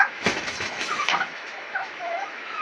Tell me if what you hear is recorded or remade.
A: remade